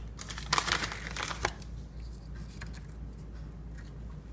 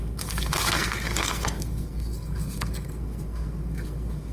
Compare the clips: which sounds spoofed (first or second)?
second